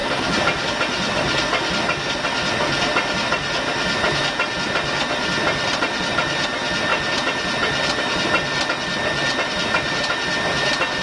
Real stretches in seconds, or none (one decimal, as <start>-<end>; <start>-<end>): 0.7-11.0